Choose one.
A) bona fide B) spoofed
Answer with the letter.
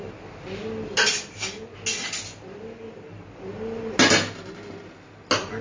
A